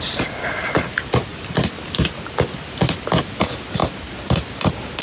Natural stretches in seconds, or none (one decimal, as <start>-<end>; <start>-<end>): 0.0-1.3; 2.3-5.0